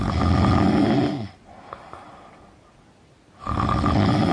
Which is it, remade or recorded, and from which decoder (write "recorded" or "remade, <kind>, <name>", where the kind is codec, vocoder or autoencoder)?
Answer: recorded